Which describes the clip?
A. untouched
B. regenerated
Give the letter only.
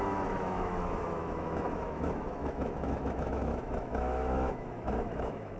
B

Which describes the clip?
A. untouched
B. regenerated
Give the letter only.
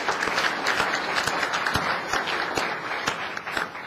A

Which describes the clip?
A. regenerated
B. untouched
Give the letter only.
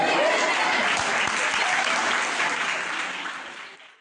B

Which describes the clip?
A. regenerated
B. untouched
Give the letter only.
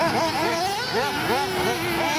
B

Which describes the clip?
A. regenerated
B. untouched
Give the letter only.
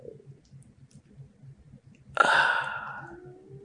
B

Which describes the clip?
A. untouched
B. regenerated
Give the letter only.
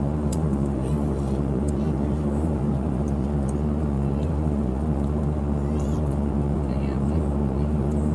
B